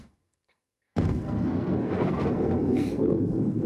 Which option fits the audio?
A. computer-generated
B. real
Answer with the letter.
A